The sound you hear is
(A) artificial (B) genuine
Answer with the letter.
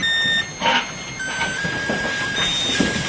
B